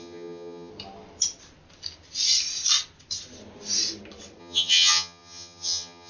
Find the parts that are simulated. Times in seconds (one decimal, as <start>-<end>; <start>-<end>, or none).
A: 0.0-0.7; 4.4-6.1